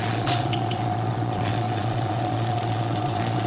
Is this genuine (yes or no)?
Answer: no